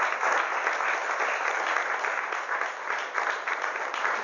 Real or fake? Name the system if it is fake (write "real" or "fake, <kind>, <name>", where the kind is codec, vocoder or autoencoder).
real